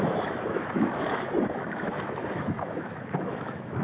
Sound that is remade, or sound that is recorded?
remade